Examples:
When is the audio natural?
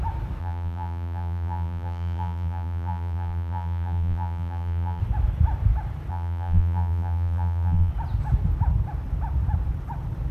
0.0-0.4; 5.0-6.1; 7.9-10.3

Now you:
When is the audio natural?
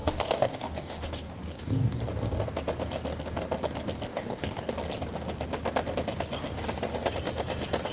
2.0-4.1; 4.7-7.9